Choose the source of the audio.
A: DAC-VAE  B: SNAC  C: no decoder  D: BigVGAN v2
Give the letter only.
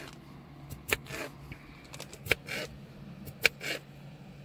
C